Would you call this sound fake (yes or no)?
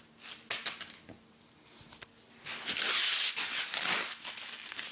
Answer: no